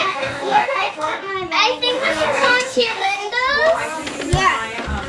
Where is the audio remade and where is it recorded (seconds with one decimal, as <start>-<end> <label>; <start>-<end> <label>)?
0.0-1.3 remade; 1.3-1.9 recorded; 1.9-3.3 remade; 3.3-5.1 recorded